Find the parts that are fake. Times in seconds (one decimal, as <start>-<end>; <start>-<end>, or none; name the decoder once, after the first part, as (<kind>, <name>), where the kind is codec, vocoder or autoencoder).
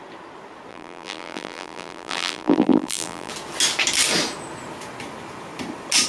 0.7-3.3 (vocoder, BigVGAN v2)